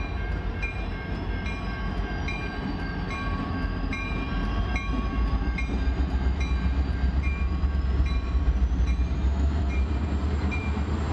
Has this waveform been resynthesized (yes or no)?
yes